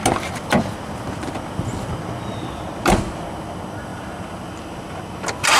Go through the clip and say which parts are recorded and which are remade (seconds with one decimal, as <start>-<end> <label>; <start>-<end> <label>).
0.0-3.9 recorded; 3.9-4.9 remade; 4.9-5.6 recorded